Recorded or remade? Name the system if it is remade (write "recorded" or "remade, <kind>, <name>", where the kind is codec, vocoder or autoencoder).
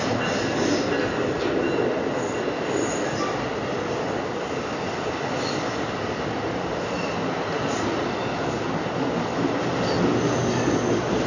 recorded